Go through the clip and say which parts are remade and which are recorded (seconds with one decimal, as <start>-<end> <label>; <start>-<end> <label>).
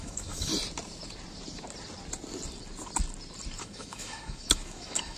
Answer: 0.0-0.5 remade; 0.5-3.6 recorded; 3.6-5.2 remade